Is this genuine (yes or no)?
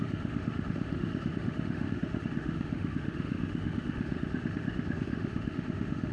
no